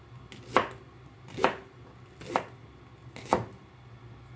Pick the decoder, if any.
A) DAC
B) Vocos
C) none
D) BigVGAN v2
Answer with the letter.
C